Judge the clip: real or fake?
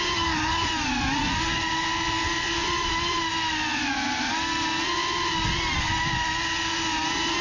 real